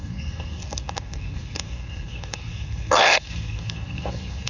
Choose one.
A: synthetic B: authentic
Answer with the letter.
A